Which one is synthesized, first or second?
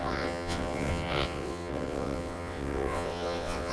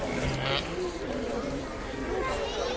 first